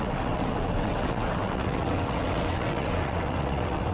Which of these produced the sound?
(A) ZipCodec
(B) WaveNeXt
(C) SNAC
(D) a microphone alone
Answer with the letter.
B